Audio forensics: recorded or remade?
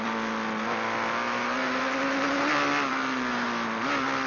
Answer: recorded